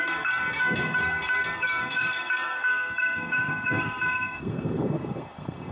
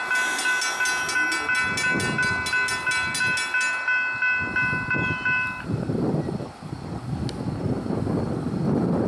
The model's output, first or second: first